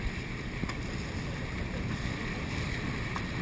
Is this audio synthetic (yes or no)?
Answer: no